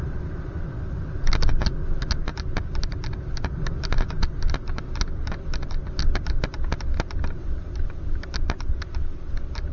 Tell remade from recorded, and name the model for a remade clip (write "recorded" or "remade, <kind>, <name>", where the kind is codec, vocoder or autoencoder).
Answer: recorded